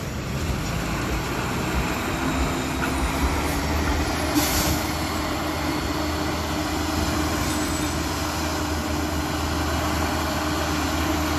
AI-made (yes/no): no